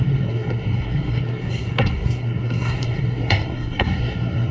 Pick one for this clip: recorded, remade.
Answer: remade